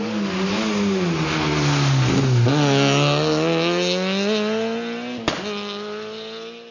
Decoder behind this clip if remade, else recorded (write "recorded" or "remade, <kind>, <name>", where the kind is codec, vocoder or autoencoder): recorded